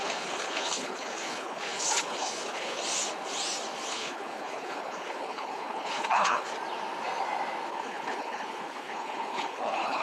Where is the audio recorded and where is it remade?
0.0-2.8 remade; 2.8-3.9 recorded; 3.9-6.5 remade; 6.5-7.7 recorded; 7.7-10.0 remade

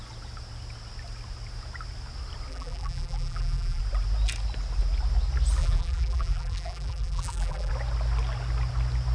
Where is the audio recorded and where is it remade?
0.0-2.5 recorded; 2.5-3.8 remade; 3.8-5.6 recorded; 5.6-7.7 remade; 7.7-9.1 recorded

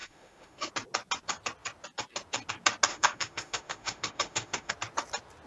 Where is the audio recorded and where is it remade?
0.0-0.7 remade; 0.7-2.9 recorded; 2.9-4.7 remade; 4.7-5.5 recorded

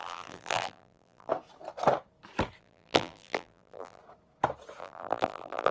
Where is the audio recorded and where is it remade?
0.0-1.3 remade; 1.3-2.6 recorded; 2.6-4.0 remade; 4.0-4.8 recorded; 4.8-5.7 remade

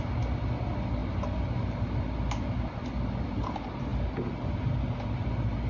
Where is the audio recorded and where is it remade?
0.0-5.7 recorded

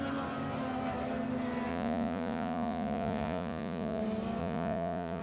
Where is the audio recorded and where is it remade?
0.0-1.7 recorded; 1.7-4.0 remade; 4.0-4.4 recorded; 4.4-5.2 remade

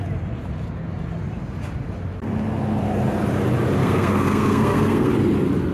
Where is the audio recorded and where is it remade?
0.0-3.8 recorded; 3.8-5.1 remade; 5.1-5.7 recorded